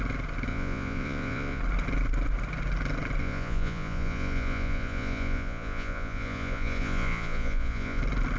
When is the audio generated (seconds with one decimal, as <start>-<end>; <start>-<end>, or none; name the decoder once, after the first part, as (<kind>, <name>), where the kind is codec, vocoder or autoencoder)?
0.5-1.6 (vocoder, Vocos); 3.2-8.0